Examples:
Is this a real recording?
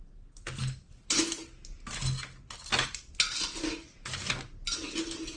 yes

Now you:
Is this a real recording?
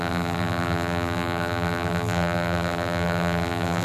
no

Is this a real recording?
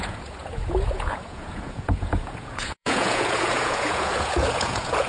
no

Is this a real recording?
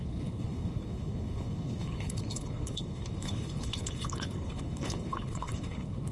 no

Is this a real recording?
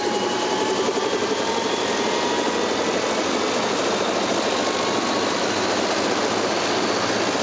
yes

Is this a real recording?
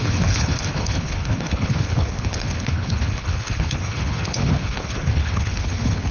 no